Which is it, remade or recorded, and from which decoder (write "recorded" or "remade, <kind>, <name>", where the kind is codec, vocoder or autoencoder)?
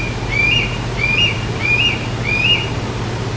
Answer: recorded